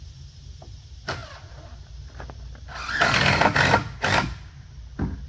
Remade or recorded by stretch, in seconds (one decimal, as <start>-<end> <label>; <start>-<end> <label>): 0.0-5.3 recorded

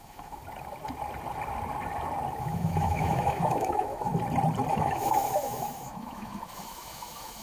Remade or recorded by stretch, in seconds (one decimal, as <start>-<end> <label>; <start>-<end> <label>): 0.0-0.4 remade; 0.4-2.4 recorded; 2.4-4.1 remade; 4.1-4.7 recorded; 4.7-7.4 remade

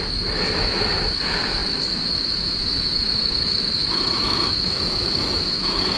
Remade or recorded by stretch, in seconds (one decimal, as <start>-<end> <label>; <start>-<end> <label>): 0.0-6.0 remade

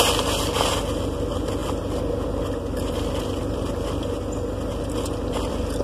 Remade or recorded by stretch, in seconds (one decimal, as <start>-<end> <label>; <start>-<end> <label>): 0.0-5.8 recorded

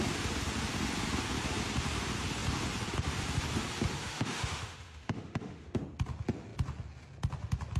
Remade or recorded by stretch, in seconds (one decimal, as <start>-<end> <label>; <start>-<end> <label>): 0.0-4.0 recorded; 4.0-5.8 remade; 5.8-7.8 recorded

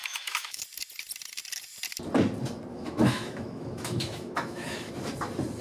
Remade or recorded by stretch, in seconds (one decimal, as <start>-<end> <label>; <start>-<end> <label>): 0.0-0.6 remade; 0.6-2.7 recorded; 2.7-4.9 remade; 4.9-5.6 recorded